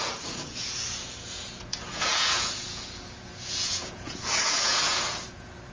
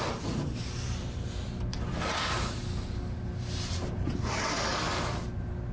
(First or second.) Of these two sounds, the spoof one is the first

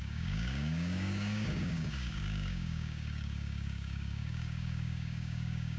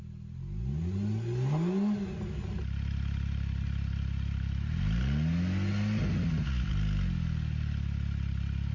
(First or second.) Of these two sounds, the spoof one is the first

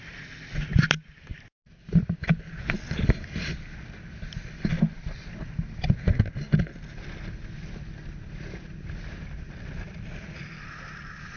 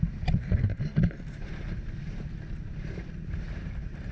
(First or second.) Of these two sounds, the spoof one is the second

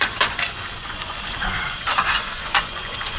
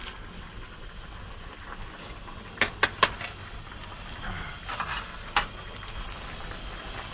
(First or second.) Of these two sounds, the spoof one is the first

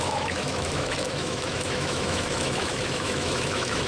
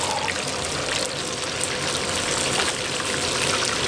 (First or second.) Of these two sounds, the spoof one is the first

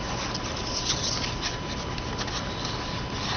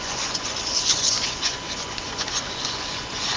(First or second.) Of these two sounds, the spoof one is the second